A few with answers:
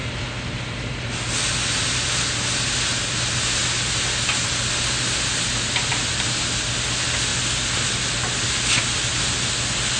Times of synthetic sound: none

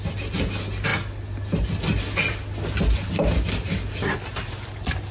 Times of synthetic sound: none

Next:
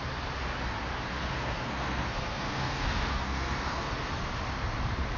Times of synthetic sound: 1.2-3.9 (codec, SNAC)

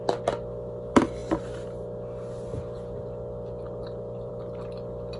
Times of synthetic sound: none

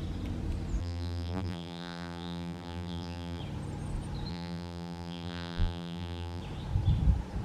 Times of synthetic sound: 0.8-3.4 (vocoder, BigVGAN v2); 4.3-6.4

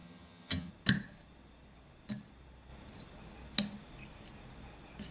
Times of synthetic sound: 0.0-0.7 (vocoder, HiFi-GAN)

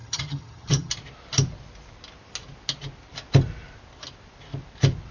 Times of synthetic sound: 0.0-0.9 (vocoder, HiFi-GAN)